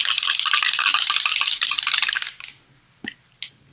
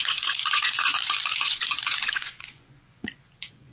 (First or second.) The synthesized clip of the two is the second